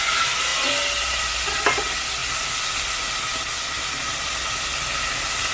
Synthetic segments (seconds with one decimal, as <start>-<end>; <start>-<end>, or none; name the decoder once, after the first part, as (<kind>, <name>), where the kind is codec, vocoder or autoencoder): none